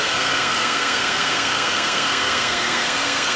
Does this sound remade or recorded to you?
remade